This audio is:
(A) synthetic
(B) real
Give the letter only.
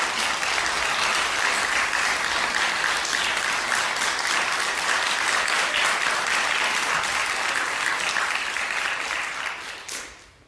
B